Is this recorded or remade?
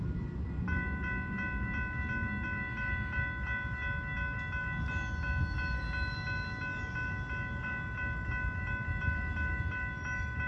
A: recorded